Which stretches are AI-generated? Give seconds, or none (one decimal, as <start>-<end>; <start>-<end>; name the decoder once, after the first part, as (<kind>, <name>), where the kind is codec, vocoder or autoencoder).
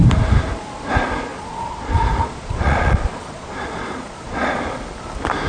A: 1.3-4.6 (vocoder, Vocos)